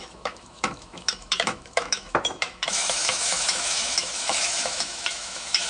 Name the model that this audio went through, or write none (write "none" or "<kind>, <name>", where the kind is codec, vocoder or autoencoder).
autoencoder, DAC-VAE